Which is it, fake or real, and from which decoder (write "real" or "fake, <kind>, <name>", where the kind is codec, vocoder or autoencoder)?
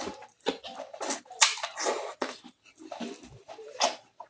real